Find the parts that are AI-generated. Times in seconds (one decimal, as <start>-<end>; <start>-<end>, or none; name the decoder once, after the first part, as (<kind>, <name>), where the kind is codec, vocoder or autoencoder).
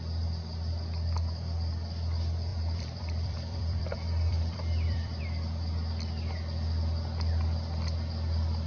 2.5-5.2 (vocoder, BigVGAN v2)